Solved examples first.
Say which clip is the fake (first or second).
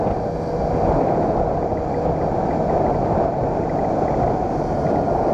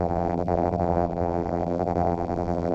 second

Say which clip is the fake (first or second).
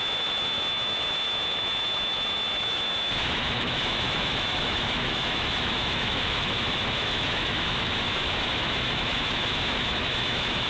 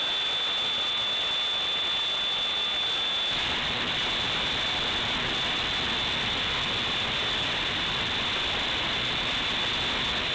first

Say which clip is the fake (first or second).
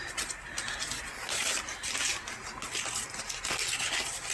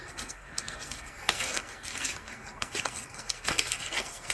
second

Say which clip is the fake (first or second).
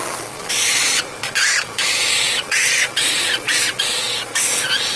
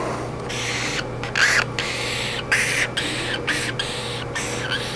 first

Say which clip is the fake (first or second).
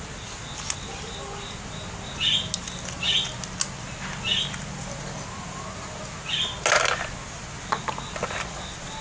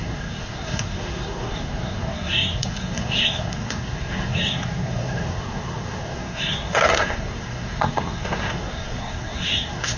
second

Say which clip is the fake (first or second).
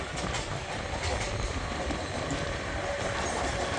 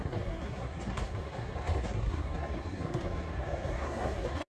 second